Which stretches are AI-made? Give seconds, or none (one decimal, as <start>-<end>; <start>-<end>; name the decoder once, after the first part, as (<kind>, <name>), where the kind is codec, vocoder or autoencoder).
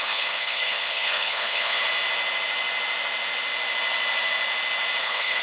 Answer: 0.0-1.8 (codec, HILCodec); 5.0-5.4